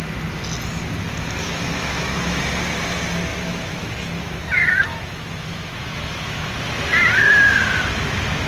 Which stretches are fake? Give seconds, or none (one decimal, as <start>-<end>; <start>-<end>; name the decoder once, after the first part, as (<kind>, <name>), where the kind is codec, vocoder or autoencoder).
1.4-2.4 (autoencoder, DAC-VAE); 3.3-4.4; 4.9-6.5

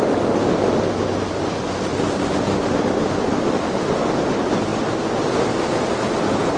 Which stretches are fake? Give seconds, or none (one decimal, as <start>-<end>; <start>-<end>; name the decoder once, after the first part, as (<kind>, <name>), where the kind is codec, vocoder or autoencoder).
none

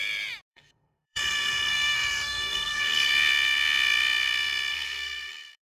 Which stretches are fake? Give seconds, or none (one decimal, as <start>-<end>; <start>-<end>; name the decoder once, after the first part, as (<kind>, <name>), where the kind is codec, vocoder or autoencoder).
0.5-3.1 (codec, SNAC); 4.7-5.8

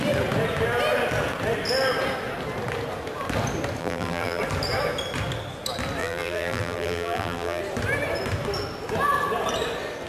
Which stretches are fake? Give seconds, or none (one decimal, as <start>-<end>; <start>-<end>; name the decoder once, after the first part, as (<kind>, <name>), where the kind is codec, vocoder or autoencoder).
3.8-4.4 (vocoder, BigVGAN v2); 6.0-7.6

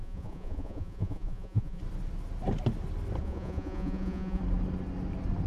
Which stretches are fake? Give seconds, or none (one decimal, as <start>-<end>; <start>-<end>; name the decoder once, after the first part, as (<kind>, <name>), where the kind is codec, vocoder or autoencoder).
0.0-1.8 (vocoder, Vocos); 3.2-4.4

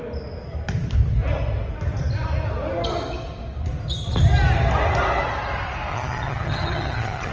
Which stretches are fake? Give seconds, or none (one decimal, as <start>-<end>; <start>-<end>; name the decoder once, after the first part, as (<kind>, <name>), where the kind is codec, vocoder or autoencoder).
5.9-7.3 (vocoder, HiFi-GAN)